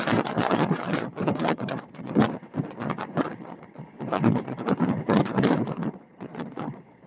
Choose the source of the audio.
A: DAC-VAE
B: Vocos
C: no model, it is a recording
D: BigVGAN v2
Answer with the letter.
B